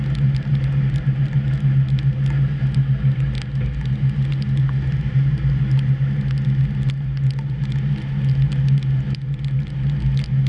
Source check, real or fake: real